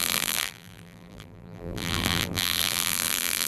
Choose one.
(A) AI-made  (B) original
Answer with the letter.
A